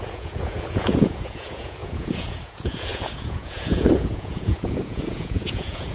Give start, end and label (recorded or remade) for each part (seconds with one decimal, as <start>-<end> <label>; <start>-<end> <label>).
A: 0.0-5.9 remade